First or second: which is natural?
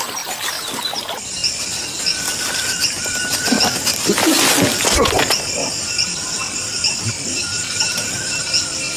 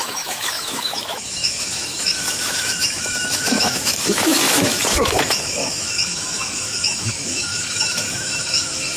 first